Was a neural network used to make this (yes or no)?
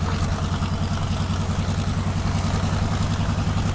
no